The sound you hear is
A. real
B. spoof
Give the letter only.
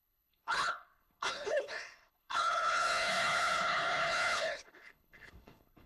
B